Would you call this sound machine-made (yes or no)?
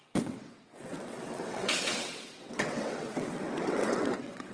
yes